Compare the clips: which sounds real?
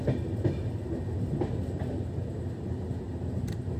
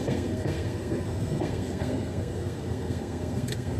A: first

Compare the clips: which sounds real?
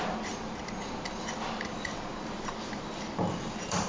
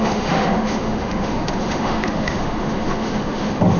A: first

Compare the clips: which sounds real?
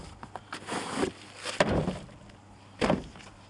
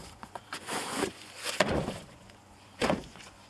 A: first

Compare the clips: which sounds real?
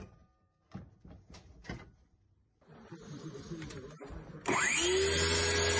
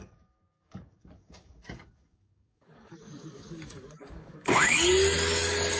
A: first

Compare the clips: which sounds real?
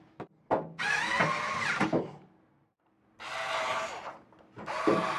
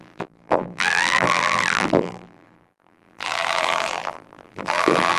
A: first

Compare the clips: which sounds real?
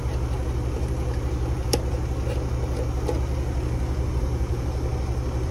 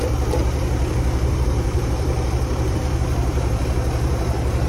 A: first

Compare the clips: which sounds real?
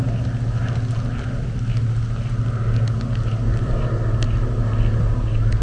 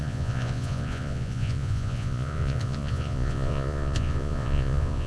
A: first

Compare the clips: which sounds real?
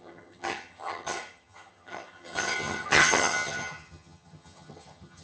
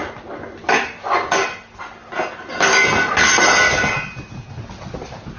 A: second